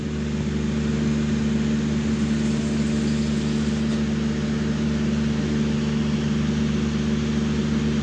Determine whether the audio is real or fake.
real